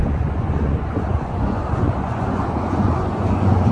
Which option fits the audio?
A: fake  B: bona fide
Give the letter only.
A